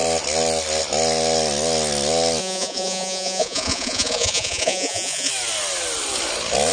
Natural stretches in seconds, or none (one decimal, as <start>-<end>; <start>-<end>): 0.0-2.4; 5.3-6.7